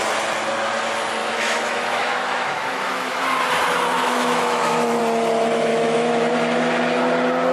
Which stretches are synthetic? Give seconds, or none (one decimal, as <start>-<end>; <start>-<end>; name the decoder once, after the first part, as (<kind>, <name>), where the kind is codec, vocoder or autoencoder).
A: 1.2-3.2 (autoencoder, DAC-VAE); 4.0-5.0; 5.7-6.3